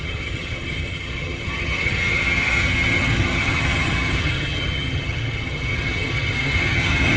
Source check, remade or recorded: remade